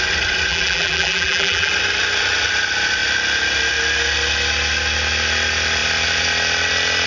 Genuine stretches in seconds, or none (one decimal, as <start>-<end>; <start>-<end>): 0.0-0.5; 1.7-7.1